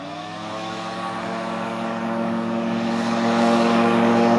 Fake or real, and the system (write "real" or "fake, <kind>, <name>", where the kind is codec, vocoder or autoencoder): fake, codec, DAC